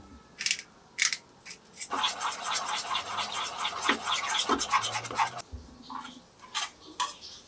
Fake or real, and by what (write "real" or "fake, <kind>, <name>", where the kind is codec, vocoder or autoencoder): real